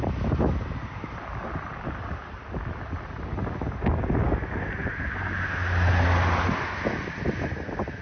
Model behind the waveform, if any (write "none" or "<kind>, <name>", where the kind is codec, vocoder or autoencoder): none